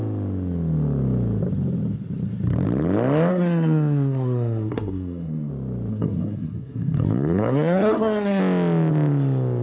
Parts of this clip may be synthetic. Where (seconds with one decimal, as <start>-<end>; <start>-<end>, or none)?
3.3-5.5; 5.9-8.4